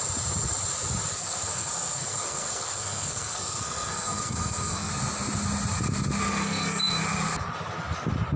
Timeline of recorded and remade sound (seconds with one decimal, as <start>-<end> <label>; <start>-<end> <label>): 0.0-1.1 recorded; 1.1-4.9 remade; 4.9-6.3 recorded; 6.3-6.9 remade; 6.9-8.4 recorded